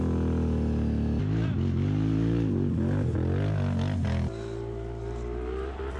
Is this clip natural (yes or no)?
yes